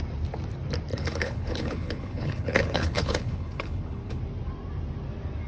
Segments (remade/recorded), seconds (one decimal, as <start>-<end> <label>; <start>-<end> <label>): 0.0-0.9 recorded; 0.9-4.2 remade; 4.2-5.5 recorded